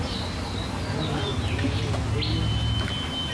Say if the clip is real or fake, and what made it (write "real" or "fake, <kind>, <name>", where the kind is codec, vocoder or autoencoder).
real